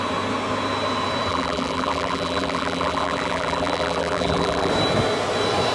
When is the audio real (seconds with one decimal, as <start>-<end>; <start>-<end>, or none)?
0.0-1.3; 4.7-5.7

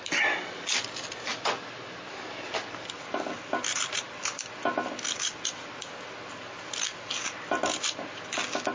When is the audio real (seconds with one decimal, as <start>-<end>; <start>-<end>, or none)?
0.0-1.3; 4.2-8.7

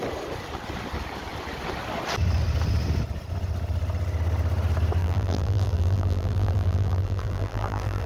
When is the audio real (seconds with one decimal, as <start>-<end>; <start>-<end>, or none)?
0.0-5.0

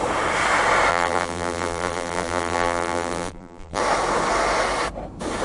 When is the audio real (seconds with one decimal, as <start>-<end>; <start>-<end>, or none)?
0.0-0.9; 3.8-5.4

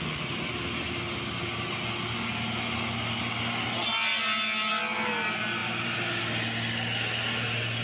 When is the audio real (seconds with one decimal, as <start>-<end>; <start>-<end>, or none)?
0.0-5.6; 6.2-7.8